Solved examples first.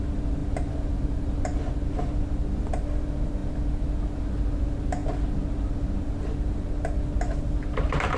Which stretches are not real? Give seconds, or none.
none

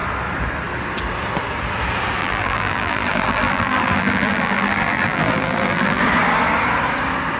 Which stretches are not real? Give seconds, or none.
2.2-6.0 (vocoder, BigVGAN v2)

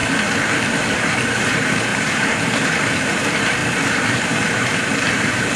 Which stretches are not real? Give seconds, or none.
1.0-3.6 (vocoder, BigVGAN v2); 4.1-5.6

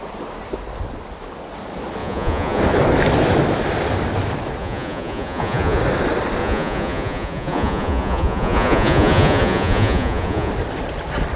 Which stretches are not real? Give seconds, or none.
2.0-2.6 (vocoder, Vocos); 4.6-5.8; 6.4-10.5

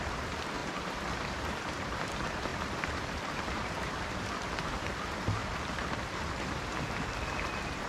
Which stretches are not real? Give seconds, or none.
0.0-0.6 (vocoder, BigVGAN v2); 1.2-7.9